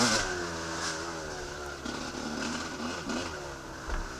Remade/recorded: recorded